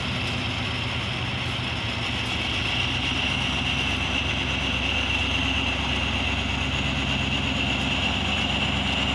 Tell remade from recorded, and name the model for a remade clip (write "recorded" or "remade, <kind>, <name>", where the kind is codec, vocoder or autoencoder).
recorded